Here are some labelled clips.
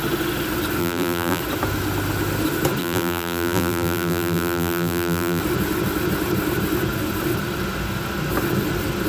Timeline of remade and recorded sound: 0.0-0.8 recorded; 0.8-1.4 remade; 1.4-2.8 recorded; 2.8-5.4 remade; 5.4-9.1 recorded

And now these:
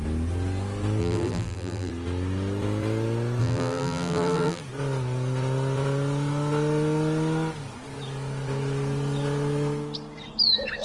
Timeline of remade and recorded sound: 0.0-1.0 recorded; 1.0-1.9 remade; 1.9-3.4 recorded; 3.4-4.6 remade; 4.6-10.8 recorded

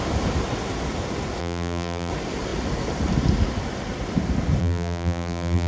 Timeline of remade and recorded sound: 0.0-1.4 recorded; 1.4-2.1 remade; 2.1-4.6 recorded; 4.6-5.7 remade

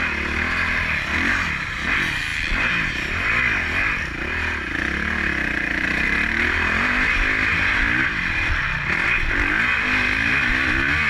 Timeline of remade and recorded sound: 0.0-2.3 recorded; 2.3-3.4 remade; 3.4-11.1 recorded

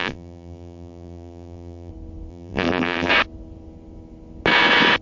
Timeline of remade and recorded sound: 0.0-1.9 remade; 1.9-2.3 recorded; 2.3-3.1 remade; 3.1-5.0 recorded

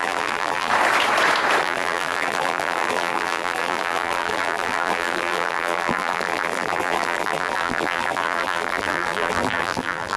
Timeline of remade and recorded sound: 0.0-0.7 remade; 0.7-1.6 recorded; 1.6-10.2 remade

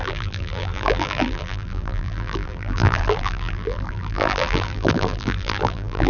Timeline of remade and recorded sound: 0.0-6.1 remade